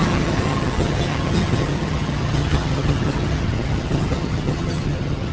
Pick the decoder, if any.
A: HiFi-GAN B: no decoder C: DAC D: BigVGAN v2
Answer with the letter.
A